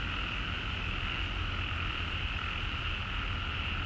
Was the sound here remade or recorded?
recorded